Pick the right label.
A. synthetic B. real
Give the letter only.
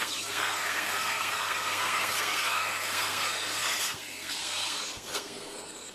A